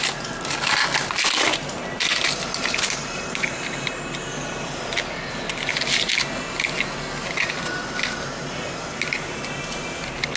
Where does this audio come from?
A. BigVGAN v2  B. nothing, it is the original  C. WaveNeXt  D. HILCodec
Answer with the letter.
B